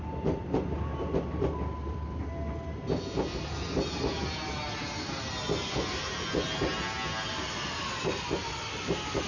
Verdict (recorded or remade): recorded